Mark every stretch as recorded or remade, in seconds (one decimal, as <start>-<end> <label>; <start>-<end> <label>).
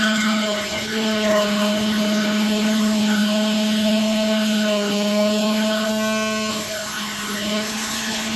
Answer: 0.0-5.9 remade; 5.9-6.5 recorded; 6.5-8.4 remade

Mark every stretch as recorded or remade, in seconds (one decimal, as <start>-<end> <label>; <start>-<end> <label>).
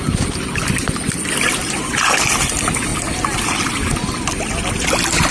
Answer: 0.0-5.3 recorded